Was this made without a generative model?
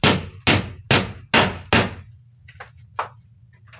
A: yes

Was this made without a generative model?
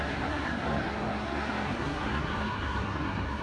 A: no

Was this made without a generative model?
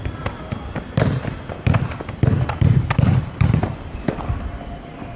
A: yes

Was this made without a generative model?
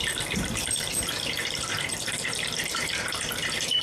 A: no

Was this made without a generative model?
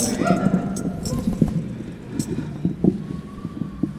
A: yes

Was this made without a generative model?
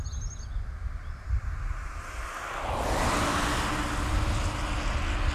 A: yes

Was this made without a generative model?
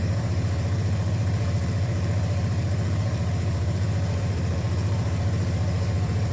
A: no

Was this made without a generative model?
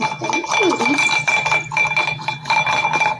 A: yes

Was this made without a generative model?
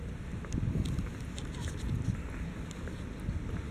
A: yes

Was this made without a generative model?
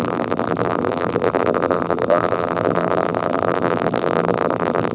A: no